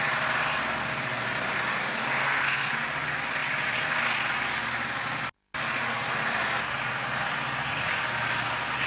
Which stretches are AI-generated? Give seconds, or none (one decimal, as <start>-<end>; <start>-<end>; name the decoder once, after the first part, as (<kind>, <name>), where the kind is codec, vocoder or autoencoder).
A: 2.2-2.7 (codec, SNAC)